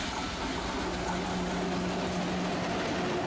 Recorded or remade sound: recorded